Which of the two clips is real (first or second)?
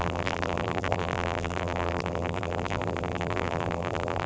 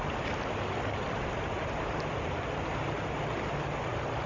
second